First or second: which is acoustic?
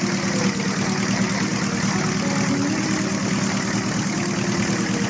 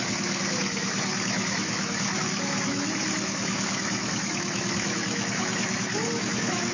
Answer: first